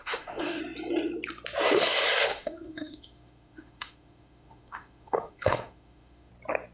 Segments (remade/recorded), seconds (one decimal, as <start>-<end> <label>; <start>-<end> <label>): 0.0-0.6 remade; 0.6-2.3 recorded; 2.3-6.3 remade; 6.3-6.7 recorded

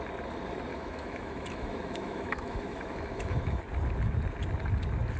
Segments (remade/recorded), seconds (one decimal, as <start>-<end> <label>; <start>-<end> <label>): 0.0-0.7 recorded; 0.7-3.6 remade; 3.6-5.2 recorded